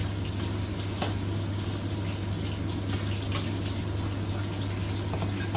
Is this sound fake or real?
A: real